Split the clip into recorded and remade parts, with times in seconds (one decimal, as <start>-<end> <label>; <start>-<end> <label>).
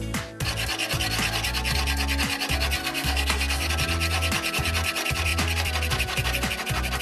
0.0-2.8 recorded; 2.8-3.7 remade; 3.7-7.0 recorded